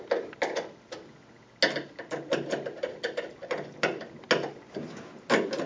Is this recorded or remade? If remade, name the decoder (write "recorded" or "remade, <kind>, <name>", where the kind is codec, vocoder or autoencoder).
recorded